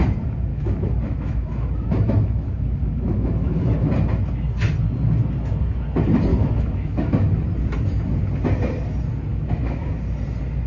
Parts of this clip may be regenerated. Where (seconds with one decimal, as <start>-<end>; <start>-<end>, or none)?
0.5-3.9; 6.3-7.1; 9.3-9.9